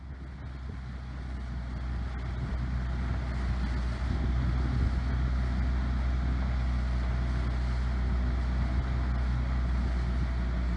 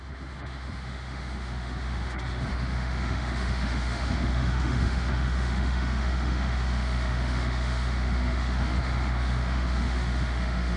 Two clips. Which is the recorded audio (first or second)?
first